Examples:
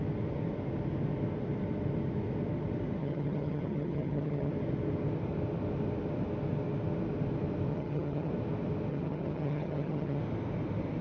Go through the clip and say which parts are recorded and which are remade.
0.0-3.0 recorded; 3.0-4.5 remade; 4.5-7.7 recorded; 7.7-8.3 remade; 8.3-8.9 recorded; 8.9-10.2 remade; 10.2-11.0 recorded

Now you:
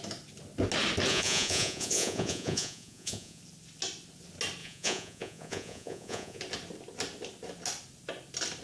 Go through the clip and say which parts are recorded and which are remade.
0.0-1.1 recorded; 1.1-3.4 remade; 3.4-4.6 recorded; 4.6-6.4 remade; 6.4-8.6 recorded

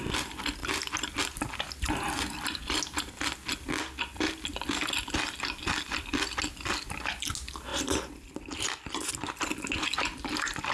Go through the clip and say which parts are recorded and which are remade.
0.0-10.7 recorded

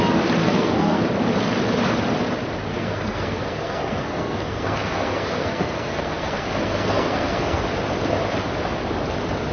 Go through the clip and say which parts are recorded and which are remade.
0.0-0.4 recorded; 0.4-1.0 remade; 1.0-2.7 recorded; 2.7-7.6 remade; 7.6-9.5 recorded